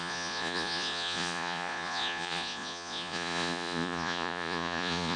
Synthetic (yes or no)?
yes